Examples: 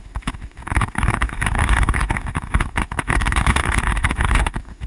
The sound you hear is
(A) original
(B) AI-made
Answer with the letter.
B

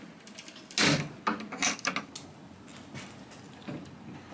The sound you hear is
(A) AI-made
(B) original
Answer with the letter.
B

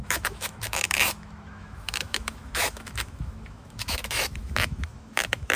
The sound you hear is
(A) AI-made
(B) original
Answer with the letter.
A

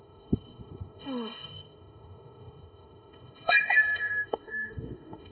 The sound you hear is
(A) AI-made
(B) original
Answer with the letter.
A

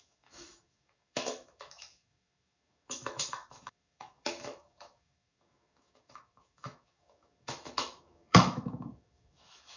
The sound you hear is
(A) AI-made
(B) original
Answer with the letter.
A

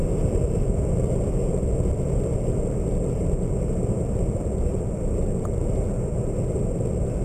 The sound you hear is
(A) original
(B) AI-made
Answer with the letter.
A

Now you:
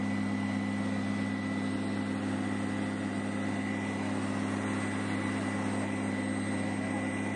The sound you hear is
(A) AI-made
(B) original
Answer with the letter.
B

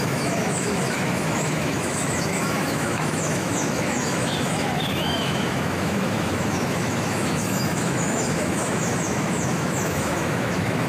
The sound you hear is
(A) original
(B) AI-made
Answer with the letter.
B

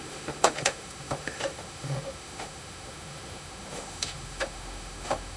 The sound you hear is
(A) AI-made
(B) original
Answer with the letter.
A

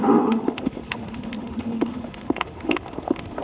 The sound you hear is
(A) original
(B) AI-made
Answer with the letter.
B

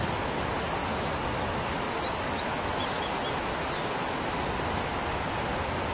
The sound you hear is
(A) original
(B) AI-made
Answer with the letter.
A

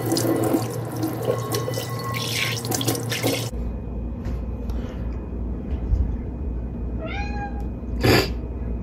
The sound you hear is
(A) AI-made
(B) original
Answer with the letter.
B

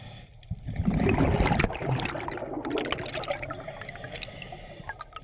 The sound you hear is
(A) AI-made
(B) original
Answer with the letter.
B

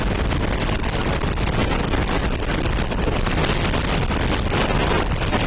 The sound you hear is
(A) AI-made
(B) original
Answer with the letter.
B